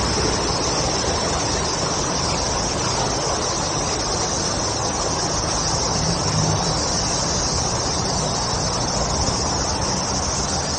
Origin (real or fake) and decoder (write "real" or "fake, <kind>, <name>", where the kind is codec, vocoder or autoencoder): real